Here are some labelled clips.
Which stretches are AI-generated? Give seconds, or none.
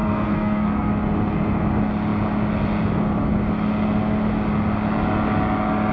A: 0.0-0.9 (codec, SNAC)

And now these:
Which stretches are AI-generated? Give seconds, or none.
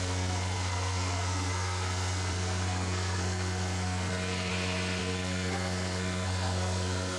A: 0.0-4.5 (codec, SNAC); 5.0-7.2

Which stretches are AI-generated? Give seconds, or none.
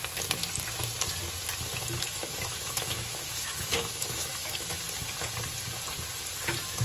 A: 1.7-4.8 (autoencoder, DAC-VAE)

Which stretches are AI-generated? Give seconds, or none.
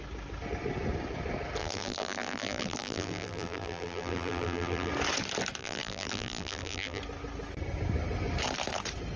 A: 1.6-4.9 (vocoder, BigVGAN v2); 5.6-7.0